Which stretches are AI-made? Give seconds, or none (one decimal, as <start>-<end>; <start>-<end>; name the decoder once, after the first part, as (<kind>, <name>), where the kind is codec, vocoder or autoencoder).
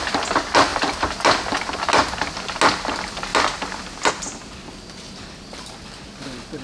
none